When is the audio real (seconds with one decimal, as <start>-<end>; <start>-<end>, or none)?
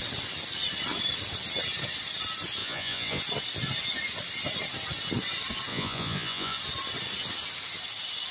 0.0-2.6; 3.2-5.7; 6.6-8.3